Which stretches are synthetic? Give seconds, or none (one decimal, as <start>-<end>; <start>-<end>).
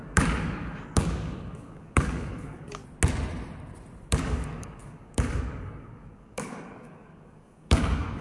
0.0-2.8; 4.1-8.2